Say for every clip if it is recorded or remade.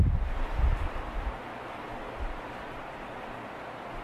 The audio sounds recorded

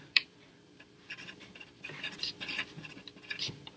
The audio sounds remade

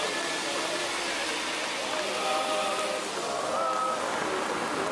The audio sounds recorded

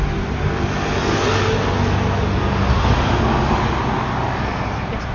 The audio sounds recorded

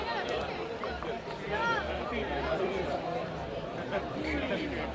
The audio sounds remade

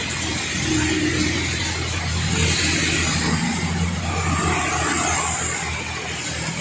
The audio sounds recorded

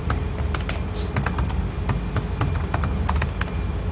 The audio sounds recorded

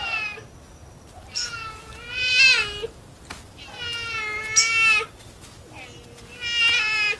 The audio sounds recorded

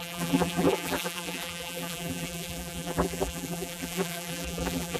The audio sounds remade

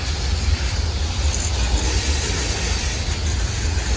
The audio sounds recorded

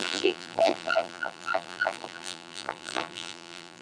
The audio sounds remade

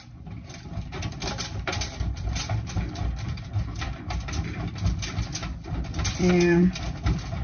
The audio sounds remade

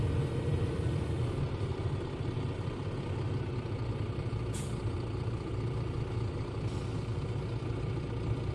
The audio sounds remade